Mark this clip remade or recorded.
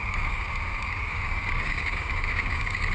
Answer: remade